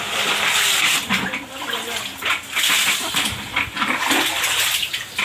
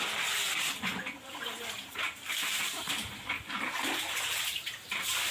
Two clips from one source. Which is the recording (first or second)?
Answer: first